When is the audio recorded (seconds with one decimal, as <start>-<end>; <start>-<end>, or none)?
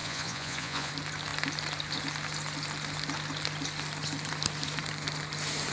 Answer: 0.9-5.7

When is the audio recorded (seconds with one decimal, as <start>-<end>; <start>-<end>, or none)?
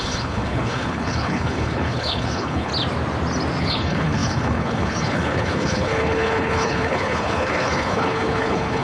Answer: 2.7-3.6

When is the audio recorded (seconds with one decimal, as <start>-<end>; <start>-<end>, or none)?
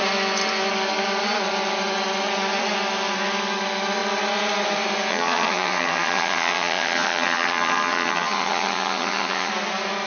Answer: 0.0-5.1; 9.5-10.1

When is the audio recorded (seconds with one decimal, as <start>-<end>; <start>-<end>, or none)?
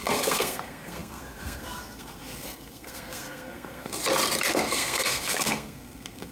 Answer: 4.0-4.5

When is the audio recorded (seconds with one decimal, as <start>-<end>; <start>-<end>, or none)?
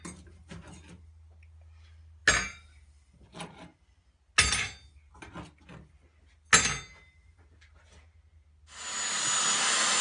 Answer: 0.0-10.0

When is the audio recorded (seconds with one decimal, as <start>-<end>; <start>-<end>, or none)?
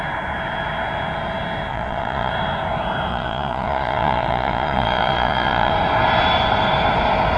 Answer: 0.0-1.7; 2.3-3.1; 5.7-7.4